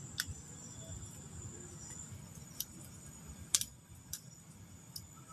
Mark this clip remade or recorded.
recorded